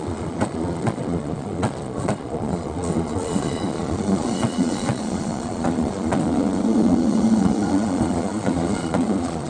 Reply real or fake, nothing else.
fake